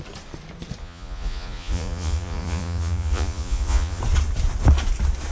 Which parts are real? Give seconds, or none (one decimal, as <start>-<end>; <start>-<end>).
0.0-0.8; 4.0-5.3